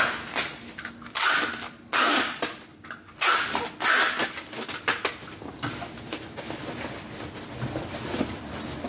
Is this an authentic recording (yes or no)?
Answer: yes